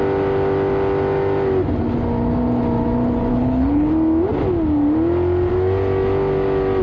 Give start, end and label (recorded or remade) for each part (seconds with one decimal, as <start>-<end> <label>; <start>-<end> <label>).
0.0-3.3 recorded; 3.3-3.9 remade; 3.9-6.8 recorded